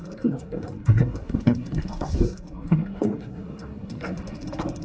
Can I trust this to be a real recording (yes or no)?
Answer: no